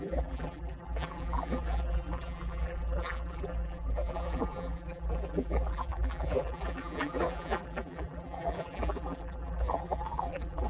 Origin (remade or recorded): remade